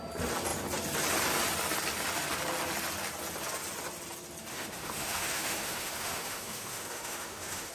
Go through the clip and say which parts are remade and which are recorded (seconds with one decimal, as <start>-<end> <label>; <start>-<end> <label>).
0.0-4.5 recorded; 4.5-7.7 remade